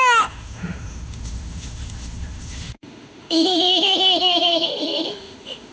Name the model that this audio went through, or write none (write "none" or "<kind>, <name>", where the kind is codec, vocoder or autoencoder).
autoencoder, DAC-VAE